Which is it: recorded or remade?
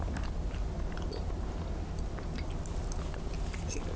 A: recorded